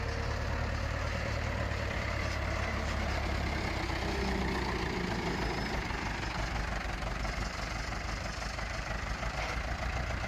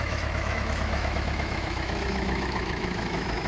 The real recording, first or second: first